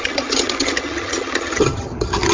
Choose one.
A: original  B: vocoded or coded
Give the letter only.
B